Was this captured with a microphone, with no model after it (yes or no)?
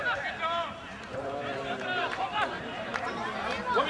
no